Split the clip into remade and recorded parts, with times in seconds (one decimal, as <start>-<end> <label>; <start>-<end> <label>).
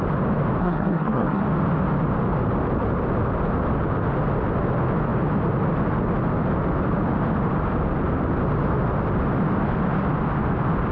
0.0-0.6 recorded; 0.6-1.4 remade; 1.4-10.9 recorded